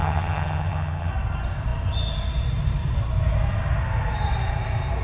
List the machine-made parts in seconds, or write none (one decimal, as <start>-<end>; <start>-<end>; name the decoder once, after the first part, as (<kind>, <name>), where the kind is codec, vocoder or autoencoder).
0.0-1.1 (vocoder, HiFi-GAN)

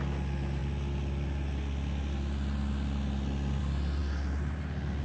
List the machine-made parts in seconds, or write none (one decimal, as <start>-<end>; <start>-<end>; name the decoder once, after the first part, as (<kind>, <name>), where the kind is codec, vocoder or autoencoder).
none

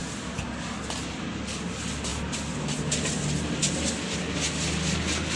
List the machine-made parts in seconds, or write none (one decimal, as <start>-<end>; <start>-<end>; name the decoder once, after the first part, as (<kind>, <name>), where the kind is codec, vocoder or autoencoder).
none